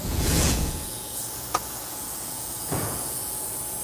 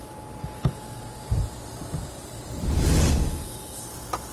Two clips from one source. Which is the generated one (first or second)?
first